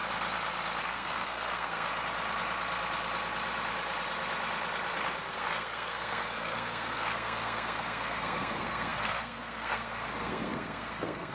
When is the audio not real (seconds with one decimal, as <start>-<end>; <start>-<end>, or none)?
0.8-1.9; 5.3-11.3